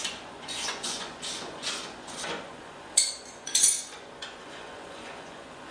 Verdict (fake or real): fake